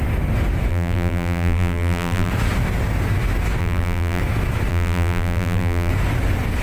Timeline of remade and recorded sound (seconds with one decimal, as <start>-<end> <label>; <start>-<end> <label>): 0.0-0.7 recorded; 0.7-2.3 remade; 2.3-3.6 recorded; 3.6-4.2 remade; 4.2-4.7 recorded; 4.7-5.9 remade; 5.9-6.6 recorded